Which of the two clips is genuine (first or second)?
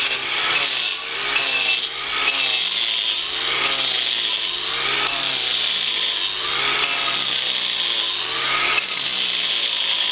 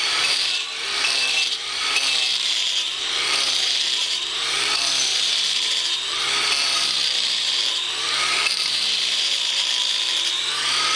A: first